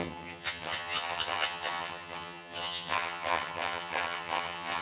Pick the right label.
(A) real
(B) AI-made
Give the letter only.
B